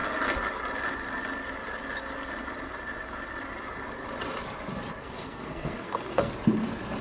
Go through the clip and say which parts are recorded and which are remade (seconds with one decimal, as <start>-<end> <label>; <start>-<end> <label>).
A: 0.0-5.0 recorded; 5.0-6.3 remade; 6.3-7.0 recorded